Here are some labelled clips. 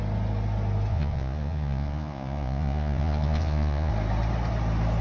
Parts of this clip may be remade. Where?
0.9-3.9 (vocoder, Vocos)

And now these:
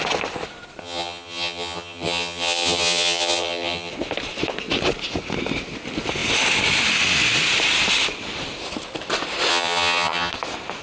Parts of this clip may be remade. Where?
0.8-3.9 (vocoder, HiFi-GAN); 9.5-10.3

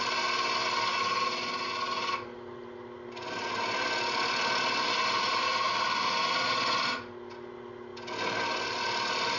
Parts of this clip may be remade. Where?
none

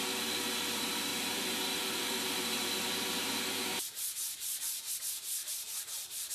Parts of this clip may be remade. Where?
1.1-4.9 (vocoder, BigVGAN v2); 5.4-6.3

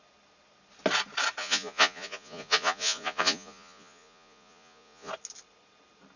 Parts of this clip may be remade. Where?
1.4-5.1 (vocoder, Vocos)